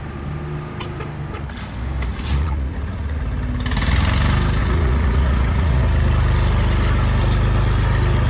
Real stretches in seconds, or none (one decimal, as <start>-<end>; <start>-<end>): 0.0-2.1; 3.2-4.6; 5.8-8.3